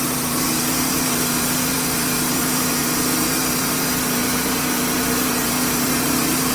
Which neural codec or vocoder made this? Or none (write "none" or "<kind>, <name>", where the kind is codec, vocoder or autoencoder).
vocoder, BigVGAN v2